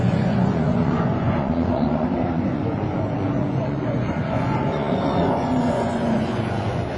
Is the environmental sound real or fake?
fake